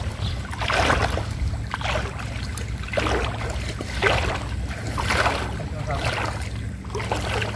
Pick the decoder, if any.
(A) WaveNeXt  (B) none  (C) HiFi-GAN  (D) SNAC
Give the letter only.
B